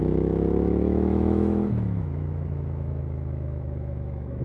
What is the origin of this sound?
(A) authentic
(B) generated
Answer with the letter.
B